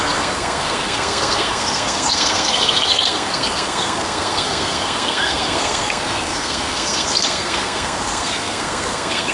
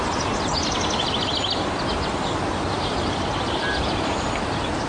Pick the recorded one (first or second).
second